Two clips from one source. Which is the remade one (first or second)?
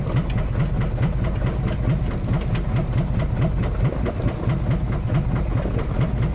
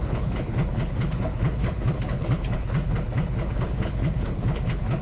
second